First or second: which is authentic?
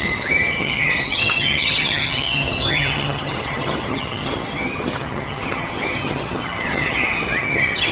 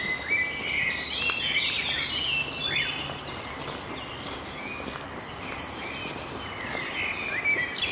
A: second